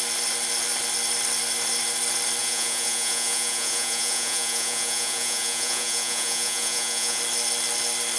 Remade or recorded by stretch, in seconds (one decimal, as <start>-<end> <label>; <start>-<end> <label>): 0.0-2.4 recorded; 2.4-7.2 remade; 7.2-8.2 recorded